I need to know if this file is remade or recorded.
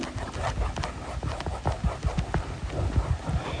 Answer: recorded